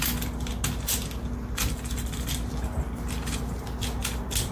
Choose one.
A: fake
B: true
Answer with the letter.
B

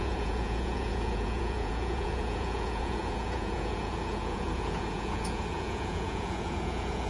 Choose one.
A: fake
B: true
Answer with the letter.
A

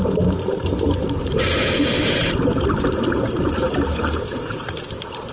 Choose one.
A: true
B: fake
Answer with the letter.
B